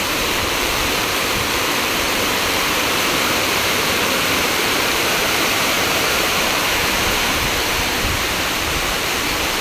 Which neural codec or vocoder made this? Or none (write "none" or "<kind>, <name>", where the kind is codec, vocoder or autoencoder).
vocoder, BigVGAN v2